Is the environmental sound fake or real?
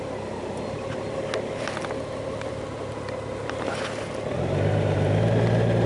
real